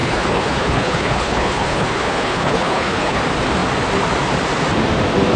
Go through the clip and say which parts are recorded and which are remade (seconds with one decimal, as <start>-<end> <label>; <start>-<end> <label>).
0.0-3.2 remade; 3.2-5.4 recorded